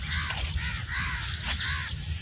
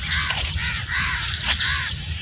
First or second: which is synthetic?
second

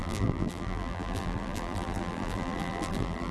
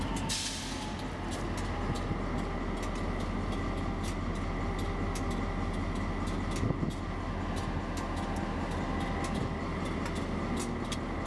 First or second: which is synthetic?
first